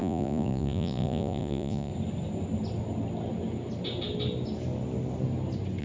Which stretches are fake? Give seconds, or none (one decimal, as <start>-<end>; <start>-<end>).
0.0-1.9